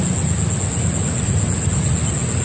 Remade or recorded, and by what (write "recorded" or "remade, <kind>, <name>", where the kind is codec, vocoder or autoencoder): recorded